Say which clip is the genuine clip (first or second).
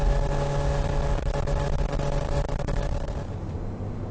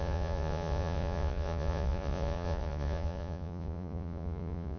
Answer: first